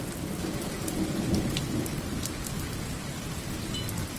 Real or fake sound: real